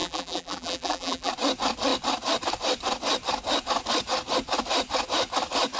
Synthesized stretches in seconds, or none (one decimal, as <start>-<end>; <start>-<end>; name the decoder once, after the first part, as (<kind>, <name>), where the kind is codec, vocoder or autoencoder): 0.0-1.3 (vocoder, BigVGAN v2)

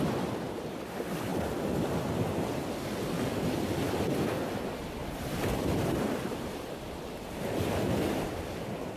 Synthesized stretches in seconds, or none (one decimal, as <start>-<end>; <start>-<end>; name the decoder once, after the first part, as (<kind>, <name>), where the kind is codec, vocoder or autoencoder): 5.0-7.6 (vocoder, BigVGAN v2)

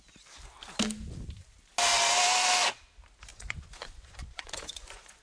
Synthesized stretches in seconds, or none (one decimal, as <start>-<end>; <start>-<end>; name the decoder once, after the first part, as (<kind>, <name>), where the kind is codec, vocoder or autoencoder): 3.3-5.2 (vocoder, Vocos)

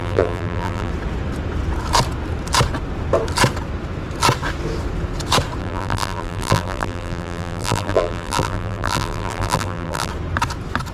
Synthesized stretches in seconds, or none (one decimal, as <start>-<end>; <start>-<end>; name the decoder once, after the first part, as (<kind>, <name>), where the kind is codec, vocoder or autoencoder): 0.0-0.9 (vocoder, BigVGAN v2); 5.6-10.1